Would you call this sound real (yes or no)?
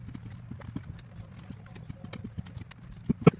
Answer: yes